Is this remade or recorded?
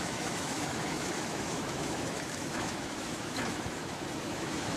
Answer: remade